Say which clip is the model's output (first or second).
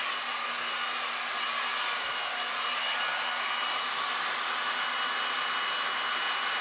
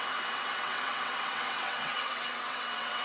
second